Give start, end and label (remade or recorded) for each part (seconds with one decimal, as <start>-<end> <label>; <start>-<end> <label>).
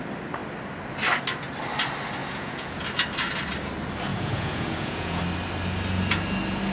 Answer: 0.0-2.2 recorded; 2.2-2.8 remade; 2.8-4.1 recorded; 4.1-5.2 remade; 5.2-6.7 recorded